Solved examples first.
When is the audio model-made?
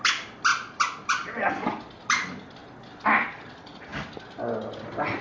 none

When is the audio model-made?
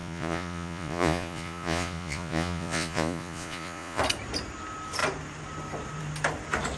0.0-4.0 (vocoder, Vocos)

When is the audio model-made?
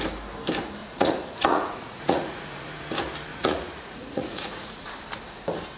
0.8-2.8 (vocoder, Vocos); 3.3-4.9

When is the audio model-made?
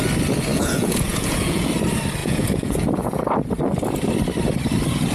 0.5-1.7 (vocoder, Vocos); 2.2-3.2